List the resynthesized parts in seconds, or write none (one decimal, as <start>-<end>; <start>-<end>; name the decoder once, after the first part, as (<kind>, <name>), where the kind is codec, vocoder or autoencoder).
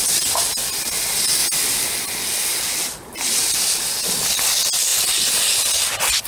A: 0.0-1.4 (vocoder, BigVGAN v2); 2.8-6.3